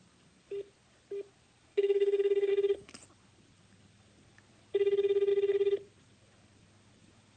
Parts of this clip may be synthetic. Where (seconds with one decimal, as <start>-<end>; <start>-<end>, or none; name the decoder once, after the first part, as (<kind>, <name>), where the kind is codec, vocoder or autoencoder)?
1.7-2.5 (codec, SNAC)